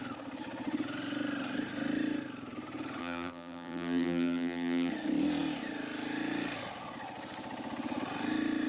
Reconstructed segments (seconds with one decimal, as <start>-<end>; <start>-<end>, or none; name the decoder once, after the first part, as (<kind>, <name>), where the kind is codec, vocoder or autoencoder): 3.0-4.9 (vocoder, BigVGAN v2)